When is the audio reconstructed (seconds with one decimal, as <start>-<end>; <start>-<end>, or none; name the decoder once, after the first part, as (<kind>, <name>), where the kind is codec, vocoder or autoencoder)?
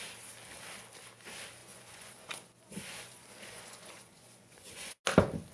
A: 1.6-4.9 (vocoder, Vocos)